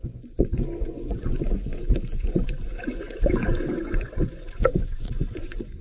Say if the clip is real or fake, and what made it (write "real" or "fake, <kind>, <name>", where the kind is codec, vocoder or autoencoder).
fake, vocoder, Vocos